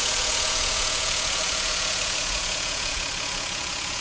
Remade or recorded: remade